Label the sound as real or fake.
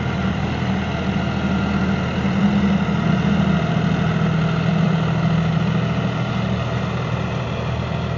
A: real